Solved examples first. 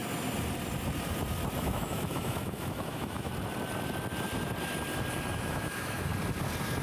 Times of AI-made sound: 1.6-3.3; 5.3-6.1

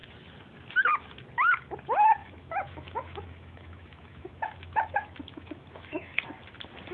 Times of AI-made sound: 2.2-6.2

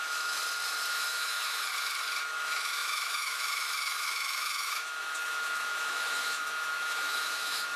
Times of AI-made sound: 0.0-0.4; 0.9-1.7; 2.2-7.8

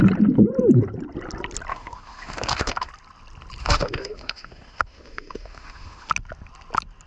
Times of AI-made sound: 1.7-2.9; 3.6-6.1

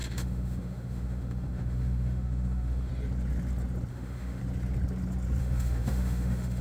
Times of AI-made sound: 0.0-2.9; 3.9-4.4; 5.4-6.6